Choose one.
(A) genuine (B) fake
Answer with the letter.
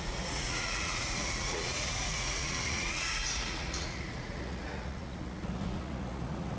B